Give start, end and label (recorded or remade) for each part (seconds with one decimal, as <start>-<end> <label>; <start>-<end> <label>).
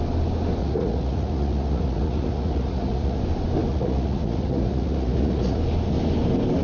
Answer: 0.0-0.6 recorded; 0.6-3.2 remade; 3.2-3.7 recorded; 3.7-5.6 remade; 5.6-6.6 recorded